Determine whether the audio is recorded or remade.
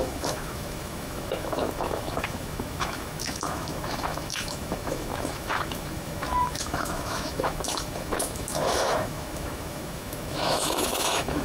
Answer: remade